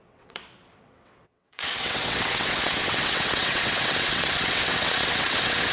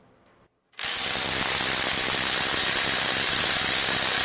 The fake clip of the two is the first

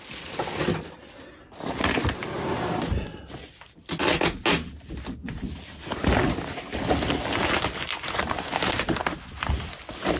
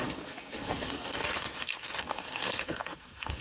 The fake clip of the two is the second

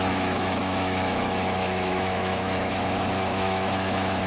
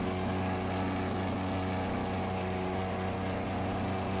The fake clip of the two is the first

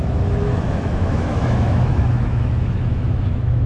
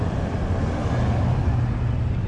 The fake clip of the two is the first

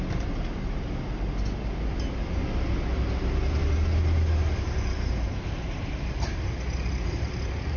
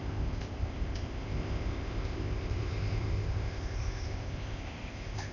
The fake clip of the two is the second